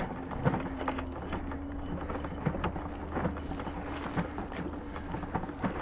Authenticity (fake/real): real